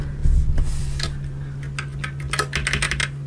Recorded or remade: recorded